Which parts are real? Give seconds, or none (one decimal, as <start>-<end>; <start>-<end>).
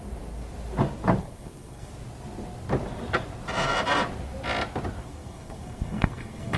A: 0.0-1.2; 1.9-5.0